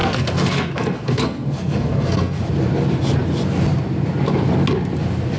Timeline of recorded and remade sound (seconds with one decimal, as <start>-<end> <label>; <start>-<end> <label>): 0.0-2.4 remade; 2.4-5.4 recorded